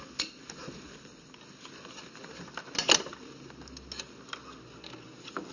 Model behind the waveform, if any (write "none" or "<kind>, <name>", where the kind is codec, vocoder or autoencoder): none